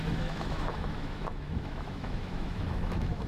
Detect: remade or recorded remade